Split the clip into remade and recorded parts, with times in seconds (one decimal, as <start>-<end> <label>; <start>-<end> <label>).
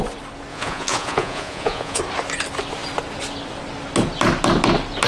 0.0-0.5 recorded; 0.5-2.0 remade; 2.0-5.1 recorded